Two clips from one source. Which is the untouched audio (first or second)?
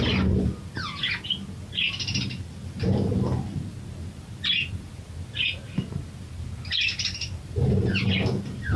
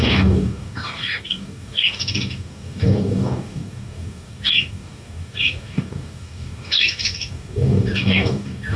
first